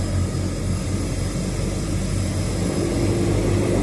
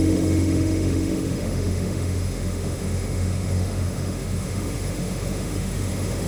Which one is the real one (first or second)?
first